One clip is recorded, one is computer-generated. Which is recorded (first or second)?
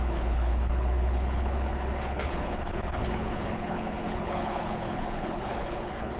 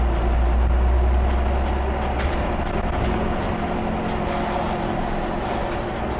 second